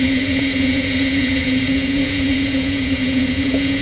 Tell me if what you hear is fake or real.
fake